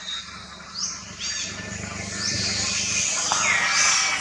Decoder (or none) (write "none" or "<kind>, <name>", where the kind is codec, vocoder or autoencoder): none